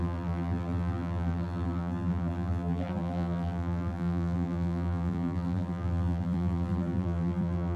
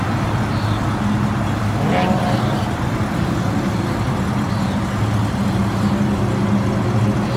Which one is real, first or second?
second